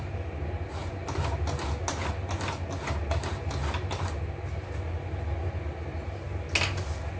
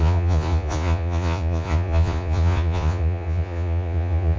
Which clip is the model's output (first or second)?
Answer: second